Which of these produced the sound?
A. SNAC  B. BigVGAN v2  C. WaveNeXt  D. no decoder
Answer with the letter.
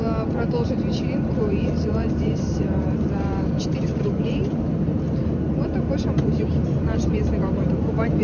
B